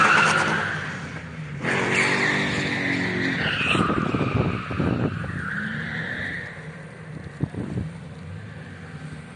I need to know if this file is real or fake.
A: real